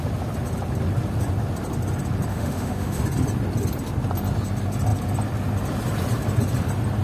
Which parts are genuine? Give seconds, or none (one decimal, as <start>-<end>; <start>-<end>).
0.0-2.3; 3.0-7.0